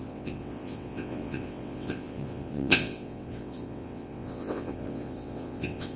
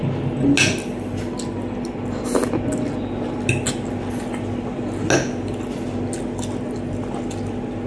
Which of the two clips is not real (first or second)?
first